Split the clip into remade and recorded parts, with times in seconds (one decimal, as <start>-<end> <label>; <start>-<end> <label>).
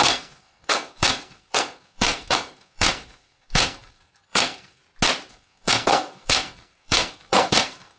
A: 0.0-4.8 remade; 4.8-5.3 recorded; 5.3-8.0 remade